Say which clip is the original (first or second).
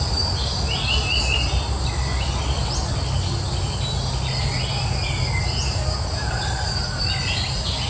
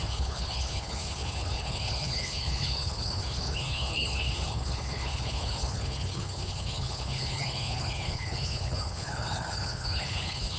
first